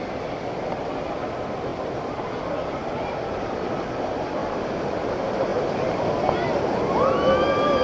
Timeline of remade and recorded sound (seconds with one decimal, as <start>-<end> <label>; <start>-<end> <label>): 0.0-7.8 recorded